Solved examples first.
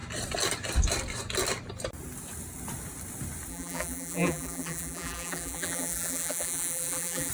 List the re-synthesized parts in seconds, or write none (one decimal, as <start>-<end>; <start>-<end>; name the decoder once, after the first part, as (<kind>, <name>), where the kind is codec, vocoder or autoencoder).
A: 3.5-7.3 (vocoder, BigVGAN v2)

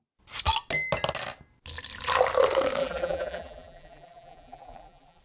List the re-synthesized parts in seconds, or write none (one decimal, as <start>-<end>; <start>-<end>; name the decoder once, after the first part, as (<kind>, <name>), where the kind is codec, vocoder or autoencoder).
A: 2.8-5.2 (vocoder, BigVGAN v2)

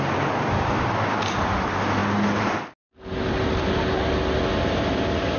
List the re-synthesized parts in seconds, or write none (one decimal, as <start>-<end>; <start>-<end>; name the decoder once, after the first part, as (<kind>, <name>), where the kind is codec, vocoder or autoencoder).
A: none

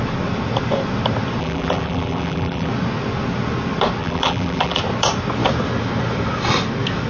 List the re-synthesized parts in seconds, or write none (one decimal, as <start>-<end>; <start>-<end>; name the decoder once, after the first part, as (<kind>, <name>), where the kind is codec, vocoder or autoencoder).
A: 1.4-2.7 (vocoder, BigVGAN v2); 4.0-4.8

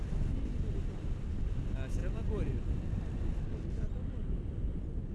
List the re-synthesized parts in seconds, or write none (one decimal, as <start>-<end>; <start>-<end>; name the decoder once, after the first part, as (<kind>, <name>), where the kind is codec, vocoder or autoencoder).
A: 2.0-3.4 (vocoder, BigVGAN v2)